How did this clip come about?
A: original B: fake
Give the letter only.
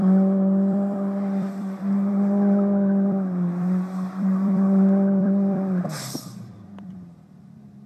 B